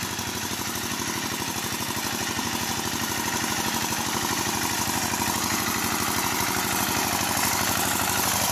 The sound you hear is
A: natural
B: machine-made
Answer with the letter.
A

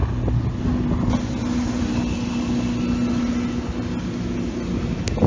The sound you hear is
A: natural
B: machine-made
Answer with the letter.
A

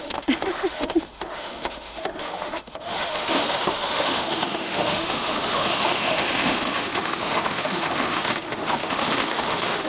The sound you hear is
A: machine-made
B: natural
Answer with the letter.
A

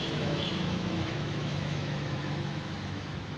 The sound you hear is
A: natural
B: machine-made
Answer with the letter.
B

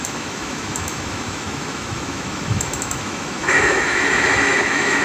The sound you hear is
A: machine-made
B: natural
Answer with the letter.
A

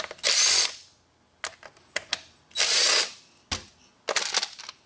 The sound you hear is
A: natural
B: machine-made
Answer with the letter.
A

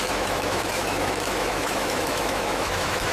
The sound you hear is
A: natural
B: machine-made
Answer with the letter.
B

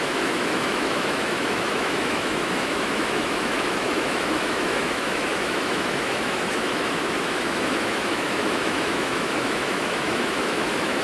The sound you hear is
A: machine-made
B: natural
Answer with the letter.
A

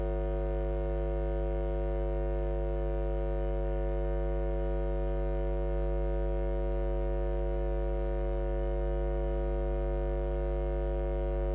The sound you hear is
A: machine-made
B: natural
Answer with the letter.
A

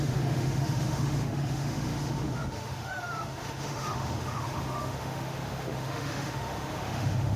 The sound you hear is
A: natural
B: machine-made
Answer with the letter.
B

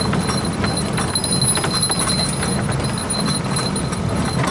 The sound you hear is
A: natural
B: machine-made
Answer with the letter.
A